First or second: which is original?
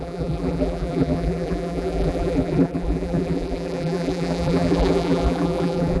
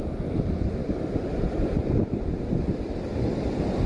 second